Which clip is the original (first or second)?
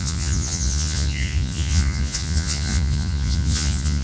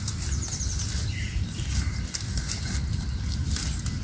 second